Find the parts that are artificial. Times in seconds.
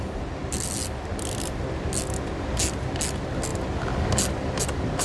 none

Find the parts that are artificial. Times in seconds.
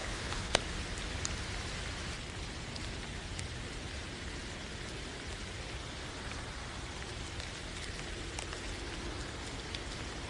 0.0-0.6 (codec, HILCodec)